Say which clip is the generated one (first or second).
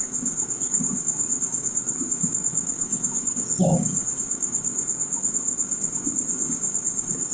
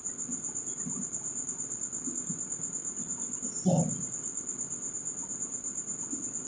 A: first